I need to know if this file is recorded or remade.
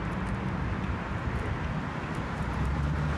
recorded